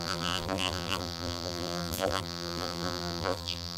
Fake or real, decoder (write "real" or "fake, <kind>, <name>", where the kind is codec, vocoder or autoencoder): fake, vocoder, BigVGAN v2